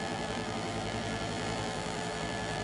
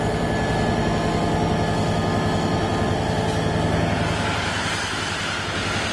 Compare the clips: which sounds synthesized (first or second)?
first